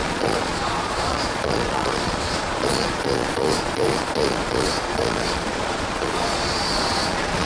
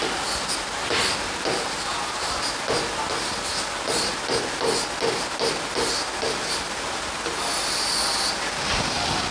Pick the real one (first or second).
second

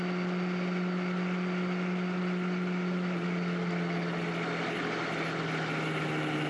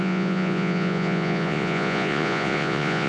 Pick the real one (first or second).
first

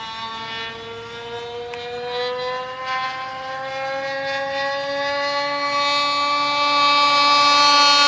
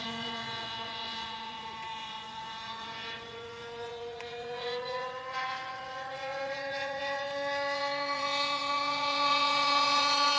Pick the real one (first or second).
first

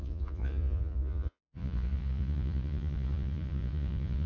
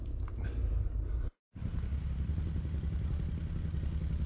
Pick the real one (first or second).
second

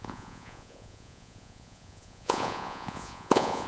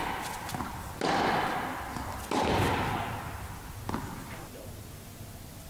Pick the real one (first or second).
second